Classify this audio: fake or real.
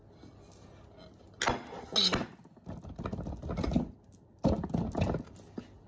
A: real